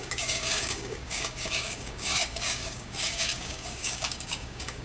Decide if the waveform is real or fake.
fake